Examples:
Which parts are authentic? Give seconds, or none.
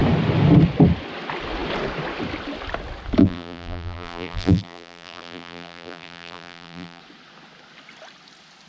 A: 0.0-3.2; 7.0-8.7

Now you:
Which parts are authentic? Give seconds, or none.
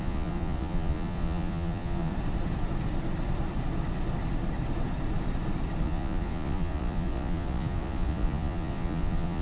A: 2.1-5.8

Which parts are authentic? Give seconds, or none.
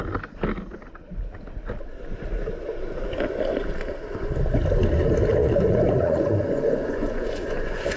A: 0.0-5.4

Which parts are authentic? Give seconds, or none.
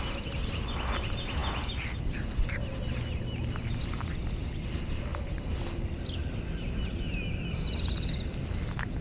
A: 0.0-9.0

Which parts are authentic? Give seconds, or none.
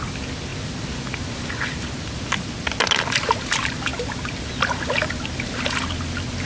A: 0.0-6.5